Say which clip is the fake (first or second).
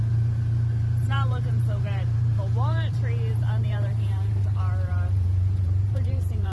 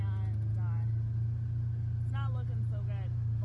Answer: first